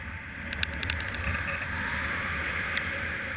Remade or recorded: recorded